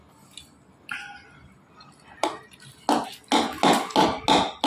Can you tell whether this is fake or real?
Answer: real